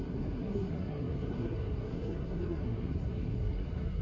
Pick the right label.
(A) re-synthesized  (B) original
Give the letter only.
A